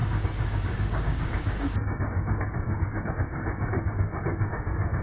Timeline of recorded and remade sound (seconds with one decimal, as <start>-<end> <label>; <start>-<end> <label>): 0.0-5.0 remade